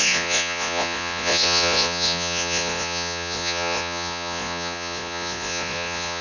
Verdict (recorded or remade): remade